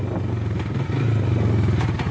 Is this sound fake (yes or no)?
no